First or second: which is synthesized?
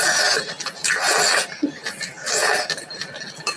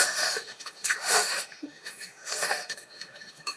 second